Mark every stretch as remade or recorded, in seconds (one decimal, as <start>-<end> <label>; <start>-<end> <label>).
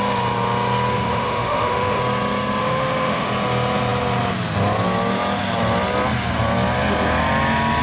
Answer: 0.0-0.9 recorded; 0.9-2.0 remade; 2.0-2.6 recorded; 2.6-3.3 remade; 3.3-7.8 recorded